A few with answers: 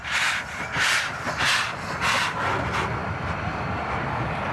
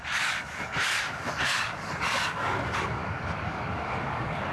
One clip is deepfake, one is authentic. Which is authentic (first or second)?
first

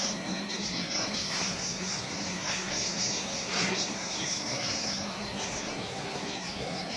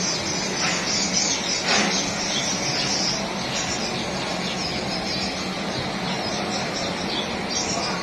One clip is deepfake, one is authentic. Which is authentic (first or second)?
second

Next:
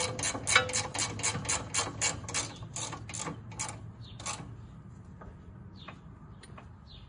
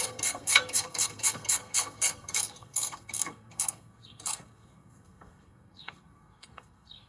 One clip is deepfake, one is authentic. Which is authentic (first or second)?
first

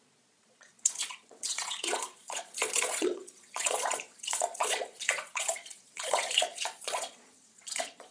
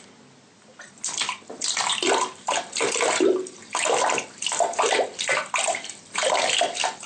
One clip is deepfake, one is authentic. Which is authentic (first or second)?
second